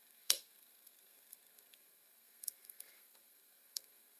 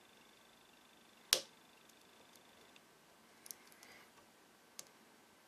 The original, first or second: second